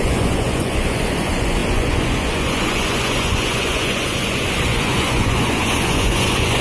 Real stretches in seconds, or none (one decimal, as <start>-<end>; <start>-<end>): none